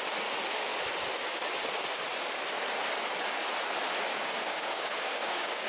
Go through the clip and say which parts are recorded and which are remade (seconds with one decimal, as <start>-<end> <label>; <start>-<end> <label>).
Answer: 0.0-4.1 recorded; 4.1-5.7 remade